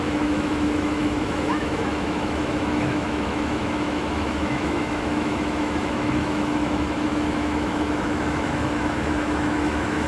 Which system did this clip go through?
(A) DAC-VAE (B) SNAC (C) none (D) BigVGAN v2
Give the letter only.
A